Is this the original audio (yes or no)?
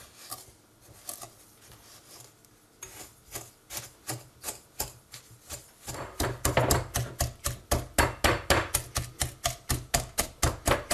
yes